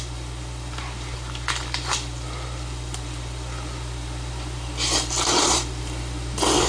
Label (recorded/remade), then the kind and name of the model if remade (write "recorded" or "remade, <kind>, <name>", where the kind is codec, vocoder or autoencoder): recorded